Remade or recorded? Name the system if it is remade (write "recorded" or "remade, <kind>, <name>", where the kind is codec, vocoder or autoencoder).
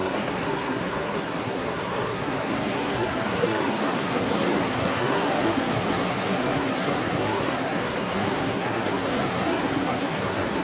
remade, codec, SNAC